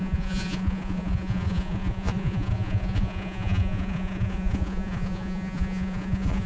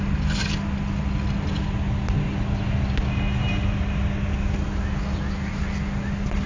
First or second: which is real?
second